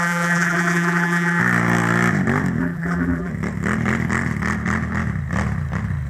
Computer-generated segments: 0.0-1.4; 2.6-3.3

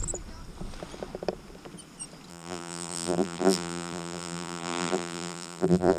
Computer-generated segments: 2.3-6.0

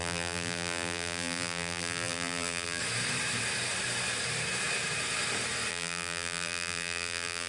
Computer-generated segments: 0.0-2.8; 5.7-7.5

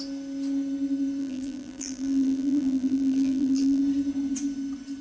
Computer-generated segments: 1.2-3.8